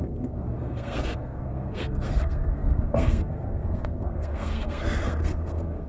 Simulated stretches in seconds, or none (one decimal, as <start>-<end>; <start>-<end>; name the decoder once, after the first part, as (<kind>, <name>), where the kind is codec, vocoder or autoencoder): 0.0-5.9 (codec, SNAC)